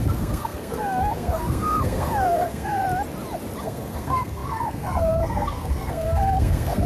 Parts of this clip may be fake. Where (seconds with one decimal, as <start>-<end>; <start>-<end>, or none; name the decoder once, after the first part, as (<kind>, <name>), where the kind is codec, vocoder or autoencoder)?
0.0-2.8 (codec, SNAC); 3.6-6.9